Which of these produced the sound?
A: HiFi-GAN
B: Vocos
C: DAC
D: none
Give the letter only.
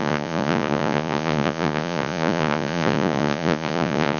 B